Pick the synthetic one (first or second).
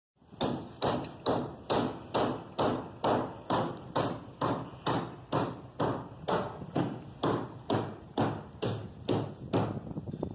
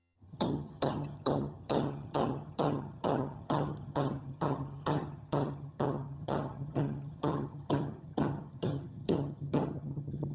second